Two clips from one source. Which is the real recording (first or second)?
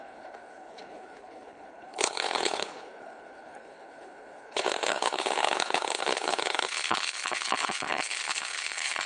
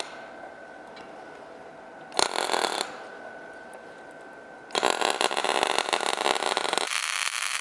second